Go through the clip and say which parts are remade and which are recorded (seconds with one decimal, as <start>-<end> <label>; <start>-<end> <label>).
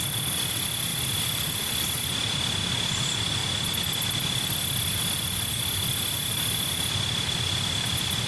0.0-8.3 recorded